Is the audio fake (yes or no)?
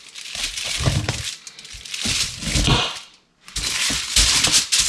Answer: no